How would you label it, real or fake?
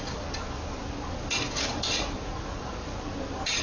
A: real